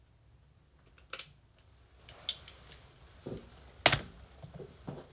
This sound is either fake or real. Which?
real